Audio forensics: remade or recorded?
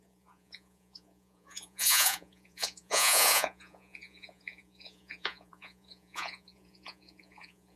remade